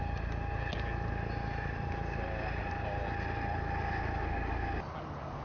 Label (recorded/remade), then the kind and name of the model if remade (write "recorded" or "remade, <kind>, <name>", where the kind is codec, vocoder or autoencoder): recorded